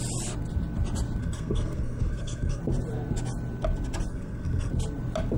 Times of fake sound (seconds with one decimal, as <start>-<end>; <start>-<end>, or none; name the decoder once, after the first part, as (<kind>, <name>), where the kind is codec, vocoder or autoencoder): 1.2-2.6 (codec, SNAC); 4.1-4.7